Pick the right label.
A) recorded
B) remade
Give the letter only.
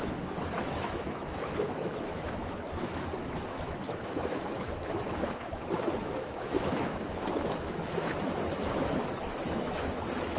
B